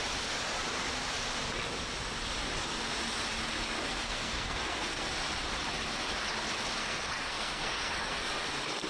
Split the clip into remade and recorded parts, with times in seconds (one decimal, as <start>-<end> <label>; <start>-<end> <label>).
0.0-3.8 recorded; 3.8-5.1 remade; 5.1-6.8 recorded; 6.8-8.3 remade; 8.3-8.9 recorded